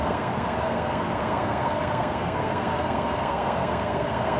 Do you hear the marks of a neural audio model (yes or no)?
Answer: yes